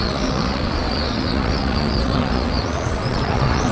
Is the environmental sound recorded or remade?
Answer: remade